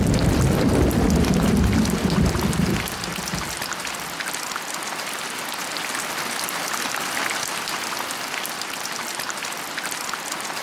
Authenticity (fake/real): real